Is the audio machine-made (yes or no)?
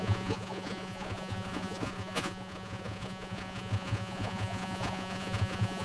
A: yes